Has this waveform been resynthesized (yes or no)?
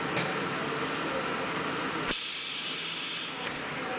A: no